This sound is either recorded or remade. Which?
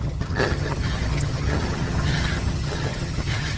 remade